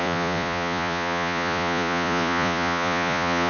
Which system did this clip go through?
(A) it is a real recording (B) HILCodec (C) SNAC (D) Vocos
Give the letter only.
D